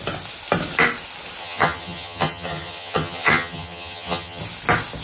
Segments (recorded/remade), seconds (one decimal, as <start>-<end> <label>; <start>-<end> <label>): 0.0-1.4 recorded; 1.4-4.4 remade; 4.4-5.0 recorded